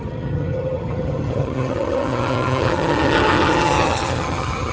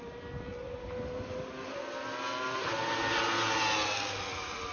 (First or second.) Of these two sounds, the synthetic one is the first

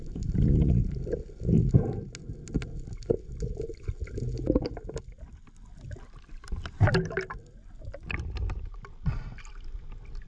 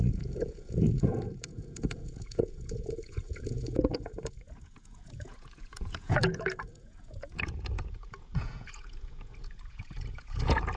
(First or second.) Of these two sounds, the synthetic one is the second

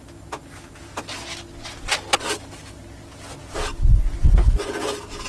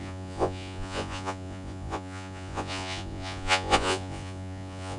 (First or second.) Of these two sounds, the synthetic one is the second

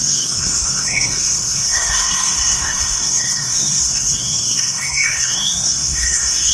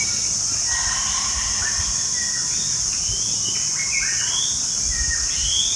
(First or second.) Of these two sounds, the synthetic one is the first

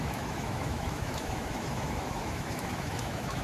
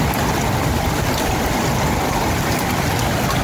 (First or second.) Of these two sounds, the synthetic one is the first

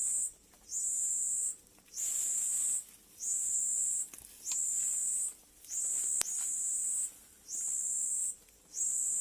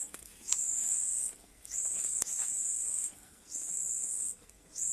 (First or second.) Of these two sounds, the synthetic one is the second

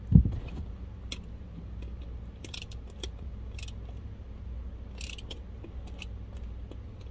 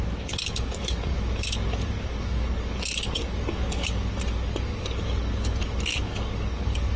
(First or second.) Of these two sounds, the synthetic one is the second